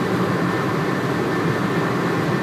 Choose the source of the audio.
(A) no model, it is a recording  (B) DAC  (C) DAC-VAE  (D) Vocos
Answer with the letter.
A